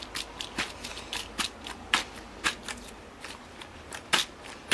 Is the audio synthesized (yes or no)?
yes